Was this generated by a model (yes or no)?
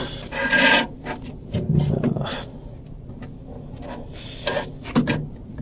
no